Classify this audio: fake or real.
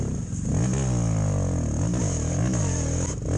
real